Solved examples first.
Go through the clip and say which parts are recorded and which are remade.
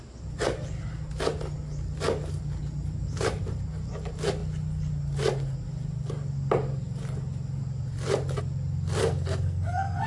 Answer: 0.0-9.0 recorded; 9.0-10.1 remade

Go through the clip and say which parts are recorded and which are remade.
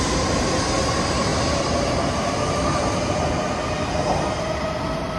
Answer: 0.0-5.2 recorded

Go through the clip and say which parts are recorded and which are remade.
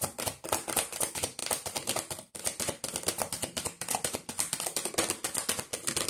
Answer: 0.0-6.1 recorded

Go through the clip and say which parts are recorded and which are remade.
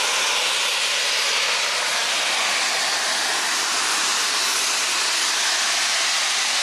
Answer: 0.0-6.6 recorded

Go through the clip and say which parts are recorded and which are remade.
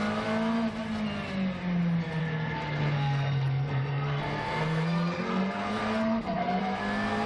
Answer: 0.0-2.2 recorded; 2.2-6.6 remade; 6.6-7.3 recorded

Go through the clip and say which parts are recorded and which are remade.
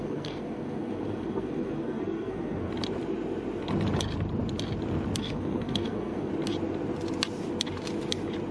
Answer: 0.0-2.7 remade; 2.7-5.2 recorded; 5.2-6.3 remade; 6.3-8.5 recorded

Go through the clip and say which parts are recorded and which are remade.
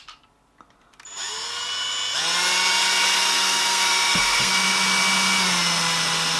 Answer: 0.0-3.3 recorded; 3.3-4.5 remade; 4.5-6.4 recorded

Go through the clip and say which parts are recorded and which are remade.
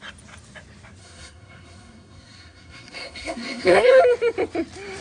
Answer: 0.0-1.0 recorded; 1.0-4.0 remade; 4.0-5.0 recorded